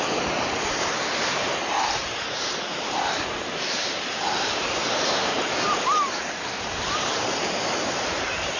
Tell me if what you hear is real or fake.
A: fake